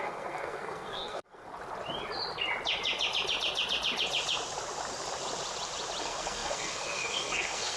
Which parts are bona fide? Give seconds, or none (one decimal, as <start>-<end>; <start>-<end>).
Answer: 1.5-6.0